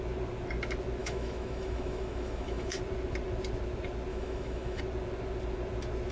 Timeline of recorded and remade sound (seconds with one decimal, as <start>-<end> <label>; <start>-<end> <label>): 0.0-1.0 recorded; 1.0-2.8 remade; 2.8-4.1 recorded; 4.1-4.8 remade; 4.8-6.1 recorded